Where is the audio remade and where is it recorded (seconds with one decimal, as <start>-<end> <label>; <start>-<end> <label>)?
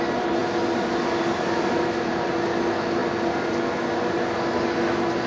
0.0-5.3 recorded